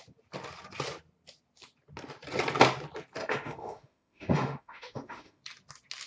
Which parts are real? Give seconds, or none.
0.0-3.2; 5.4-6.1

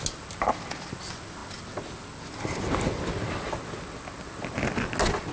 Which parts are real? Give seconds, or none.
0.0-5.3